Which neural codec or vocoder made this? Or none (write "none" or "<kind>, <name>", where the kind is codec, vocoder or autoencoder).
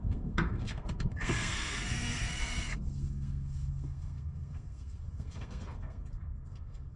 codec, SNAC